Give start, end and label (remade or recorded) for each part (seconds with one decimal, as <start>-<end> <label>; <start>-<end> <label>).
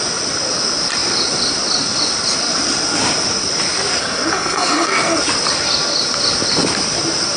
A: 0.0-4.0 recorded; 4.0-5.2 remade; 5.2-7.4 recorded